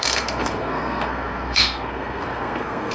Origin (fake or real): fake